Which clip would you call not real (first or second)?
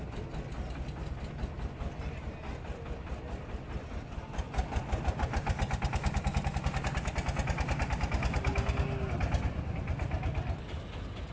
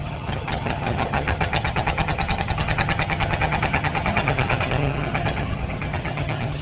second